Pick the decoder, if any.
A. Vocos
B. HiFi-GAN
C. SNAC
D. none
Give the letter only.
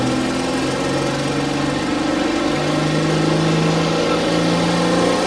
D